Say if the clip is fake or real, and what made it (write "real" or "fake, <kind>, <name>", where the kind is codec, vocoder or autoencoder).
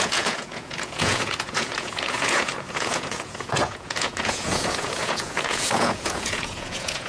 fake, vocoder, Vocos